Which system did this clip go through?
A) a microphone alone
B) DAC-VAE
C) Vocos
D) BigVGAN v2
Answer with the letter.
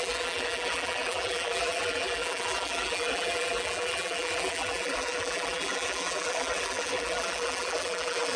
D